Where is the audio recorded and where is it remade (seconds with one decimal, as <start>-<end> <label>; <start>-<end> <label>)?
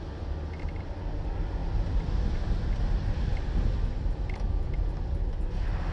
0.0-5.9 recorded